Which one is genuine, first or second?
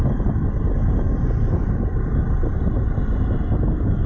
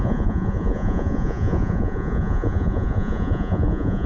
first